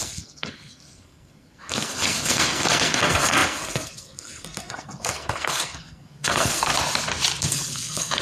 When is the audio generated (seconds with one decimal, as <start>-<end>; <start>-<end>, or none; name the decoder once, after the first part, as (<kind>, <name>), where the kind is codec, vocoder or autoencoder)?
0.0-6.7 (codec, SNAC); 7.4-8.2